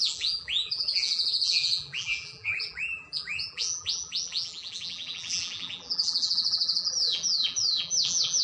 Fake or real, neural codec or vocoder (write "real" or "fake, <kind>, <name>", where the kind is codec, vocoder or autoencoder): fake, vocoder, BigVGAN v2